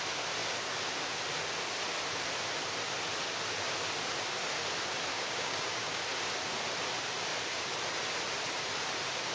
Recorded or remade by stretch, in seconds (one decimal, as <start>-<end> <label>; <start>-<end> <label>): 0.0-5.1 recorded; 5.1-6.0 remade; 6.0-9.3 recorded